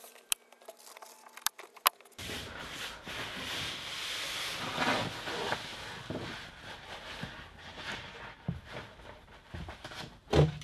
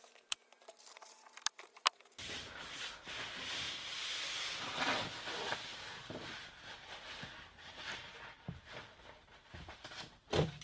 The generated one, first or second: second